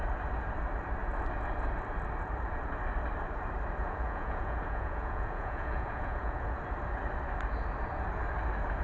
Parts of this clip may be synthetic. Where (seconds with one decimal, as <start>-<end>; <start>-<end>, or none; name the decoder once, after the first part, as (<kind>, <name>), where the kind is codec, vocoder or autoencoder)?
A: 3.8-6.6 (vocoder, Vocos)

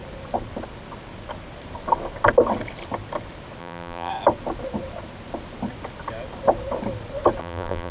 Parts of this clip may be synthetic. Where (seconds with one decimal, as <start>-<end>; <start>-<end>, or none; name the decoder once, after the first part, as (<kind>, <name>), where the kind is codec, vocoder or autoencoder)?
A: 3.6-4.1 (vocoder, BigVGAN v2); 7.4-7.9

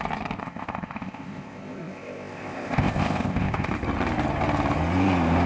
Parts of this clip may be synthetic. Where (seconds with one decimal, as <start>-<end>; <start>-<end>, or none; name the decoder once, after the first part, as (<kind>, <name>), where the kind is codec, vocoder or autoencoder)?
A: 0.4-3.7 (codec, ZipCodec)

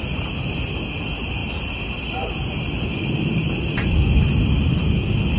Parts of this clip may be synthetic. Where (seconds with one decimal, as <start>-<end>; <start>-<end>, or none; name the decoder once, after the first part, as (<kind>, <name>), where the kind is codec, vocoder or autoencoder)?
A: none

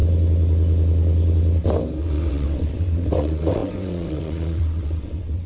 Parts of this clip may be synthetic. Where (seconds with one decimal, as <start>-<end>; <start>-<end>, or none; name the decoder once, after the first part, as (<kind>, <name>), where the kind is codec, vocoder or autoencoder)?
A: 2.0-5.5 (vocoder, WaveNeXt)

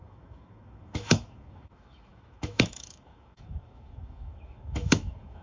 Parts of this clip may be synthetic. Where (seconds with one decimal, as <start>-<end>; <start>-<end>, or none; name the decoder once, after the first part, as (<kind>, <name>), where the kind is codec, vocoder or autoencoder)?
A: 0.0-5.4 (autoencoder, DAC-VAE)

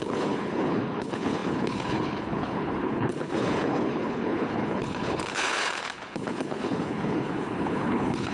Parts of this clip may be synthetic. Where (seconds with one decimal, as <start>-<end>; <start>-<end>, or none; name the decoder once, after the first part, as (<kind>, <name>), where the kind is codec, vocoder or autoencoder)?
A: 0.0-8.3 (codec, HILCodec)

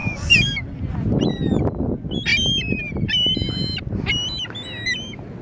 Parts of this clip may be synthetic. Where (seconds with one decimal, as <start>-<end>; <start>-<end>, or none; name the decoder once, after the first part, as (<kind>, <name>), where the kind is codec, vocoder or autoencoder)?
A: 0.0-0.8 (vocoder, BigVGAN v2)